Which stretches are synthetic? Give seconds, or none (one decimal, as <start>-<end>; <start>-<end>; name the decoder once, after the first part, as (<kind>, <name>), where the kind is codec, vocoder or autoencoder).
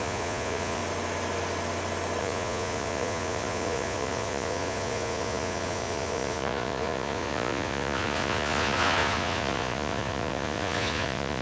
0.0-0.8 (vocoder, Vocos); 2.2-11.4